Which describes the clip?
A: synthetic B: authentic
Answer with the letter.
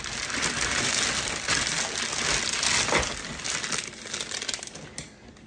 B